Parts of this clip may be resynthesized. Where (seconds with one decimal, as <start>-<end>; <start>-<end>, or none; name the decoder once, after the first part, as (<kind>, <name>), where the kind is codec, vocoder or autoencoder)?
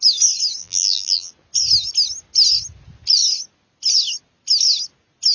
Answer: 0.6-1.3 (vocoder, BigVGAN v2)